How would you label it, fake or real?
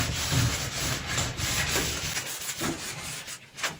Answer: real